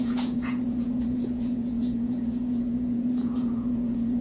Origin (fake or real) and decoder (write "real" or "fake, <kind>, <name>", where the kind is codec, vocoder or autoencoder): fake, vocoder, Vocos